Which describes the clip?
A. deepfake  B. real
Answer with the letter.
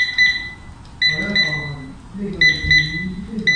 B